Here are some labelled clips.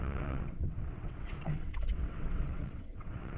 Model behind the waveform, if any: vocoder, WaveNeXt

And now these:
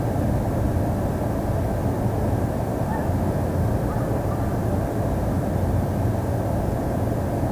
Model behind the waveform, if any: none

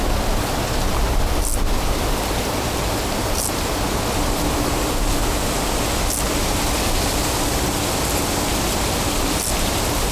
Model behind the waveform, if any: none